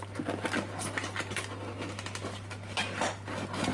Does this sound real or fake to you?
real